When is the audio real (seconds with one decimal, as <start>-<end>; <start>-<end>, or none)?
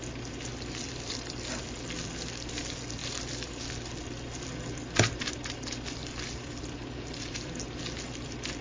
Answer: 0.0-0.5; 1.6-3.0; 3.6-6.0; 7.6-8.6